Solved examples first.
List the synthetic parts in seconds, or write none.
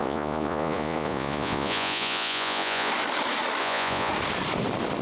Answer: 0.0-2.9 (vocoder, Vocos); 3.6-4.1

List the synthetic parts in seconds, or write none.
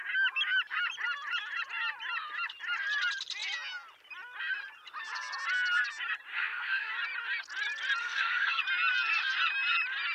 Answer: 6.3-6.9 (codec, SNAC); 8.0-8.6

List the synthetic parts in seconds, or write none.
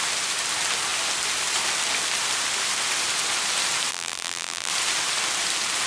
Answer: 3.9-4.7 (vocoder, BigVGAN v2)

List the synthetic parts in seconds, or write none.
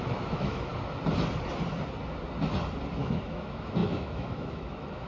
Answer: 0.0-0.7 (autoencoder, DAC-VAE); 3.0-5.1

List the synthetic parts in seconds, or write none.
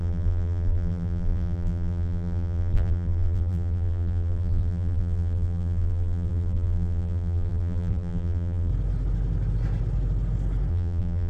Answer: 0.0-8.7 (vocoder, BigVGAN v2); 10.7-11.3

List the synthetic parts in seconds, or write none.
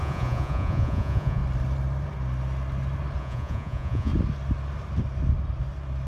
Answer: 0.0-1.4 (vocoder, Vocos); 3.2-4.1